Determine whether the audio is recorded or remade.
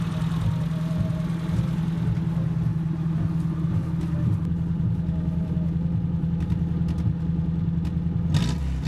recorded